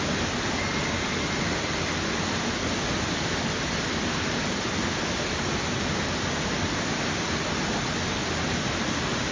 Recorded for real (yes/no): yes